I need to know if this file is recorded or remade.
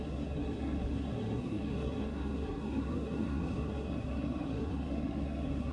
remade